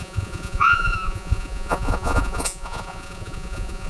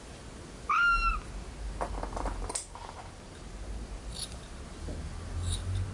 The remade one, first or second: first